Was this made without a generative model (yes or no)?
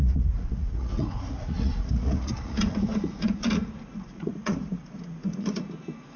no